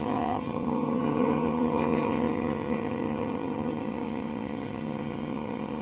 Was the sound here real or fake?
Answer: fake